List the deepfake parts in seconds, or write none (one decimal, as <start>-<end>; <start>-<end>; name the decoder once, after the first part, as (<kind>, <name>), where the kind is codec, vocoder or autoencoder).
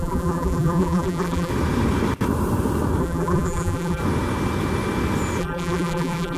0.0-1.5 (vocoder, BigVGAN v2); 3.0-4.0; 5.4-6.4